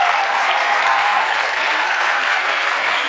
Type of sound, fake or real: fake